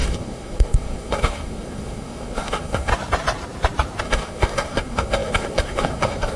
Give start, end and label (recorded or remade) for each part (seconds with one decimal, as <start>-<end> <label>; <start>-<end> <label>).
0.0-2.9 remade; 2.9-4.0 recorded; 4.0-6.4 remade